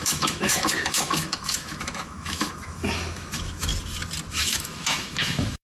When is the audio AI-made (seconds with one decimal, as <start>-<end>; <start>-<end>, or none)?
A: 0.0-3.7; 4.3-5.6